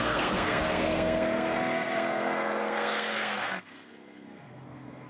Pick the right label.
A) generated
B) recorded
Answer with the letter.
A